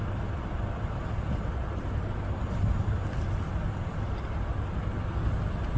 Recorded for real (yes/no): yes